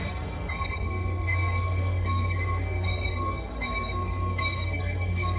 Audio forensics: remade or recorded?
remade